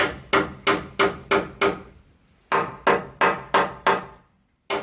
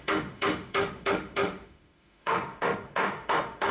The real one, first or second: first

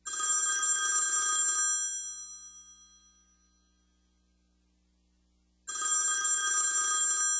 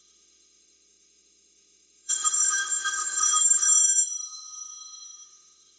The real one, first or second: first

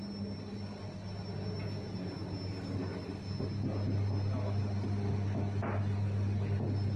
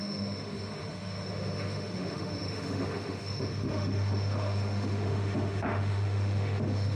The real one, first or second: first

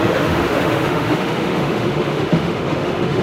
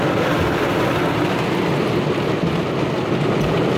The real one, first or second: second